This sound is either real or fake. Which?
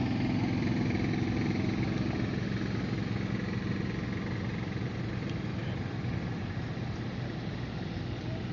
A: real